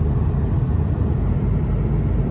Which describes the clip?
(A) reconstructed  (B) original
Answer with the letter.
B